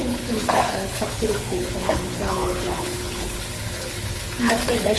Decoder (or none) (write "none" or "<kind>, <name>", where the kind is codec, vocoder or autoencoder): codec, HILCodec